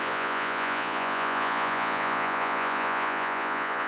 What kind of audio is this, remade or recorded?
remade